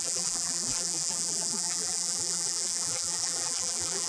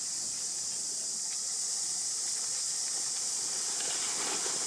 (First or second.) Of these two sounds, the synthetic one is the first